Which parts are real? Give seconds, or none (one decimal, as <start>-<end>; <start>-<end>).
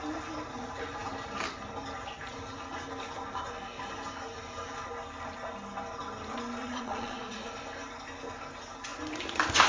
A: 0.0-6.6; 7.5-9.7